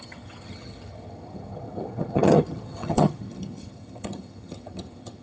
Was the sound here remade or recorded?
remade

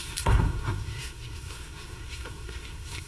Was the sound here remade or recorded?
remade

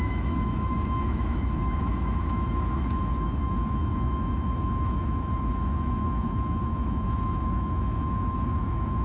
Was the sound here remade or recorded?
remade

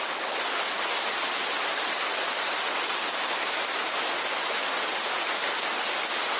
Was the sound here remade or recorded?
recorded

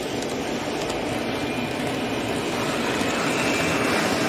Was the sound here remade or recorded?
recorded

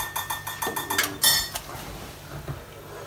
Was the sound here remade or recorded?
recorded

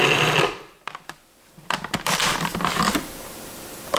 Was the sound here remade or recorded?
remade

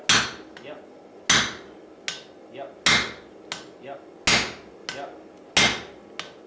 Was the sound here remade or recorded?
recorded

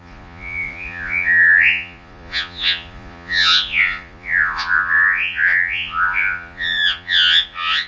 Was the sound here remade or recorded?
remade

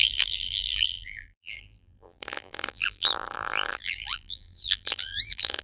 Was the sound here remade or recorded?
remade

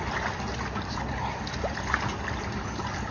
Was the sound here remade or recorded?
recorded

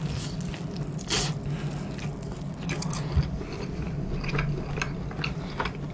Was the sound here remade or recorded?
recorded